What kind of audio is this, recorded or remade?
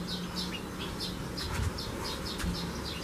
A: recorded